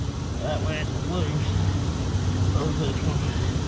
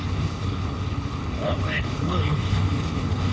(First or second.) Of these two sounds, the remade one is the second